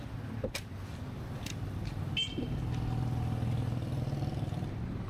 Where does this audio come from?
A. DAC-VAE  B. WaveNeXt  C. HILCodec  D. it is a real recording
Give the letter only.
D